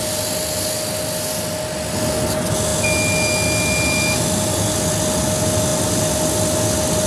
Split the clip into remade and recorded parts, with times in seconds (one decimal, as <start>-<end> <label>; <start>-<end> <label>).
0.0-7.1 recorded